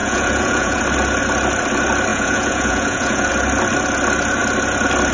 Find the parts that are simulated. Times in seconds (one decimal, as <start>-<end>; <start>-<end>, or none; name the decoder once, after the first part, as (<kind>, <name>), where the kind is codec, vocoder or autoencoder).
0.0-0.8 (vocoder, Vocos); 2.1-3.3